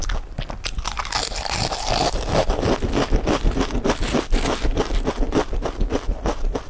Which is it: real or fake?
real